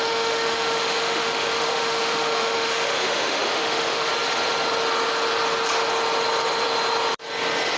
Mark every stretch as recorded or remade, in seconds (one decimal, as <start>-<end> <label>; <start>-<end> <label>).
0.0-4.1 remade; 4.1-7.8 recorded